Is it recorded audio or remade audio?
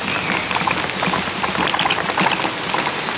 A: recorded